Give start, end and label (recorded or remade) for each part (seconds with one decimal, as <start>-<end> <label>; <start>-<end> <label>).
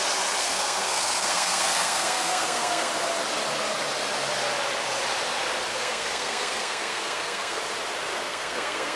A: 0.0-0.4 recorded; 0.4-2.9 remade; 2.9-5.7 recorded; 5.7-7.6 remade; 7.6-8.1 recorded; 8.1-9.0 remade